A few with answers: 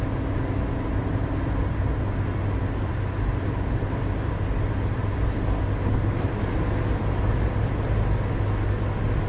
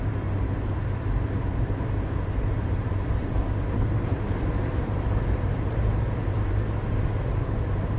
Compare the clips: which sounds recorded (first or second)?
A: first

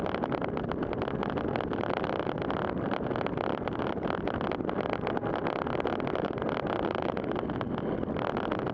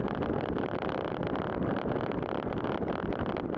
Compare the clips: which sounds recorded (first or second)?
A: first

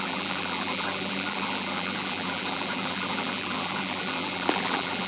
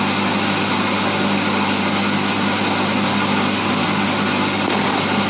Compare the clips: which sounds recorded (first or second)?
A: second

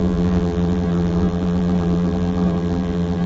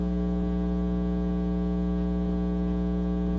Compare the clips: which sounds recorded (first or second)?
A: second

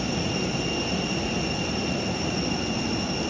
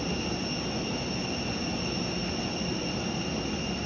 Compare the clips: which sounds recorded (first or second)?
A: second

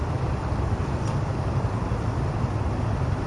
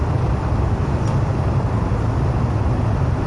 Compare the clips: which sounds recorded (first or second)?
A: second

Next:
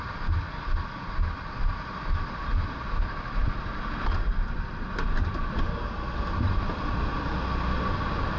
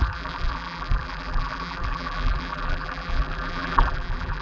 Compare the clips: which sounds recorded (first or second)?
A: first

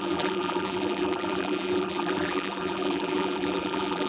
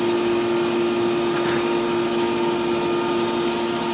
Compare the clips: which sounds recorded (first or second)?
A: second